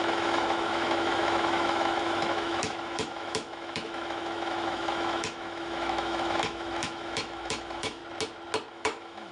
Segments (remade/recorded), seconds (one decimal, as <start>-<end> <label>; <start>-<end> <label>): 0.0-8.0 remade; 8.0-8.7 recorded; 8.7-9.3 remade